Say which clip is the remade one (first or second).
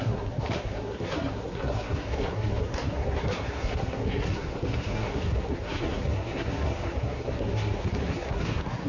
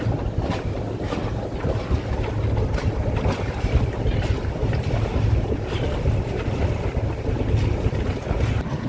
first